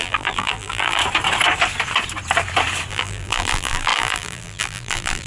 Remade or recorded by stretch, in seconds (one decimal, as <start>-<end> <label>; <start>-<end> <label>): 0.0-1.0 remade; 1.0-2.9 recorded; 2.9-5.3 remade